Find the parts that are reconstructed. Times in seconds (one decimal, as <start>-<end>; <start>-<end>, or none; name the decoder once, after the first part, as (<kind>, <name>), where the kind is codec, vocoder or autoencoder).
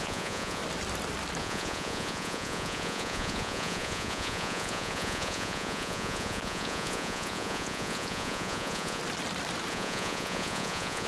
0.0-0.6 (vocoder, Vocos); 1.4-9.0; 9.7-11.1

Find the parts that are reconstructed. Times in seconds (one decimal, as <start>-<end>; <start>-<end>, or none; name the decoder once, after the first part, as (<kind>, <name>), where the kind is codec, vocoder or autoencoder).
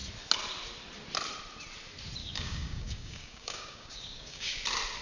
2.2-4.6 (codec, DAC)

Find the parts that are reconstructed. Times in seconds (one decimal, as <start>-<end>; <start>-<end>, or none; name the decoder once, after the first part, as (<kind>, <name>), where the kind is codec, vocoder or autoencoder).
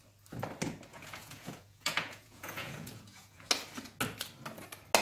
0.9-3.5 (vocoder, Vocos)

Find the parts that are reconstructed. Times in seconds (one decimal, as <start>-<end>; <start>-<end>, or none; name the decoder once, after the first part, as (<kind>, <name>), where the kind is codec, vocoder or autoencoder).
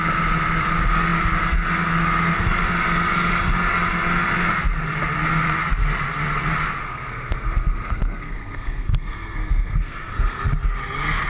6.8-10.4 (codec, SNAC)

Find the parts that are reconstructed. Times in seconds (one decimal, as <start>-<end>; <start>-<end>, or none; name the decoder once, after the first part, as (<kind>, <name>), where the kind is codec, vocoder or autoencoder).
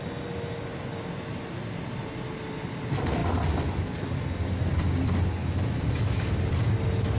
5.4-6.2 (autoencoder, DAC-VAE)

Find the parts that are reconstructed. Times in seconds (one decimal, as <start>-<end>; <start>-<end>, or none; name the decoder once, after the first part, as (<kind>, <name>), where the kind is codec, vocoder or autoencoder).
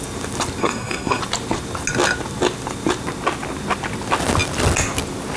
0.6-1.2 (codec, SNAC)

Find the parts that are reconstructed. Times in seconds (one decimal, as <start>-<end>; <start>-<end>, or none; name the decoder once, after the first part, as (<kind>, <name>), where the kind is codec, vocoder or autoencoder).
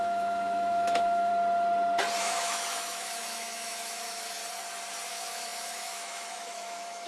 0.0-1.3 (autoencoder, DAC-VAE); 2.2-4.4; 5.1-7.1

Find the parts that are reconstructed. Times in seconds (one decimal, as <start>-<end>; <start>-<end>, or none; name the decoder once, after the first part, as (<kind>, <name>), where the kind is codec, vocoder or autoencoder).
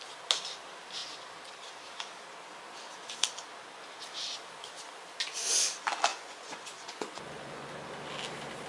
6.1-7.7 (vocoder, Vocos)